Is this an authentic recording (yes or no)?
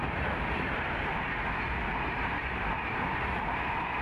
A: yes